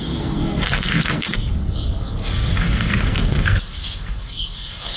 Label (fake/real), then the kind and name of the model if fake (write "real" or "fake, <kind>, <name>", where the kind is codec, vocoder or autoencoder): fake, codec, SNAC